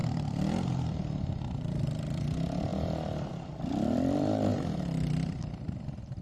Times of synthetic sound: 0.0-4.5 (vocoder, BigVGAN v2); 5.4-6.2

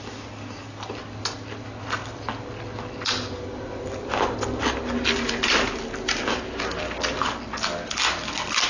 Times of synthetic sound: none

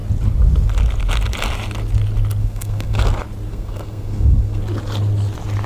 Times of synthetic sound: 2.4-3.0 (codec, SNAC); 3.5-4.6

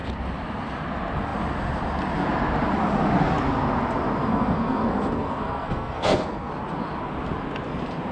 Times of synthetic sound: 4.2-6.5 (codec, SNAC)

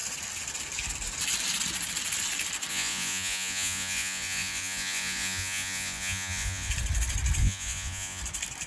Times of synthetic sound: 2.7-6.7 (vocoder, Vocos); 7.4-8.2

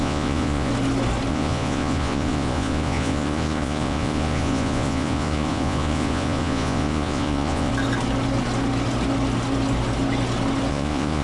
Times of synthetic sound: 0.0-0.7 (vocoder, Vocos); 1.3-7.7; 10.7-11.2

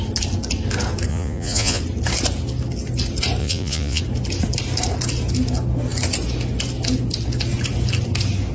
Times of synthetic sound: 1.1-1.8 (vocoder, Vocos); 3.4-4.0